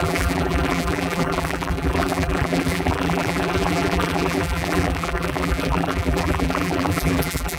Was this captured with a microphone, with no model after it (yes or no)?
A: no